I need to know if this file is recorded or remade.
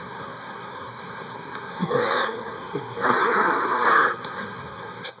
remade